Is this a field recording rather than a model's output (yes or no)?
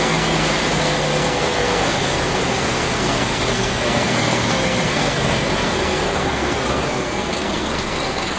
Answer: no